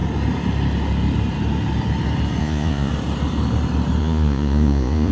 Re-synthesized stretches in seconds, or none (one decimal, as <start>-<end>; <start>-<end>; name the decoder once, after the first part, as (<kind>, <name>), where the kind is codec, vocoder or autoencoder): 2.4-2.9 (vocoder, Vocos); 4.0-5.1